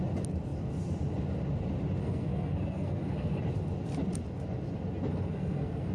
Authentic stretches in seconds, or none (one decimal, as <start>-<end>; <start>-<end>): 0.0-2.0; 3.4-5.1